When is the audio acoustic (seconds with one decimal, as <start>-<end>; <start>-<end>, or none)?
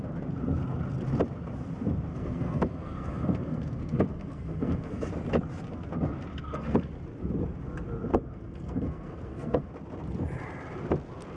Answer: 0.0-2.1; 5.1-6.3; 6.9-8.1; 9.7-11.4